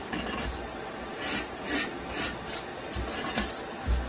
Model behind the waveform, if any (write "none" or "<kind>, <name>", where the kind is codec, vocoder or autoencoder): none